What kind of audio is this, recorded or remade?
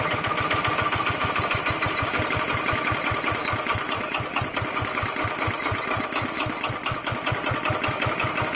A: recorded